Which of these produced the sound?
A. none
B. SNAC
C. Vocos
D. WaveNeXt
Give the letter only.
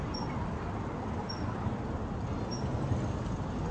A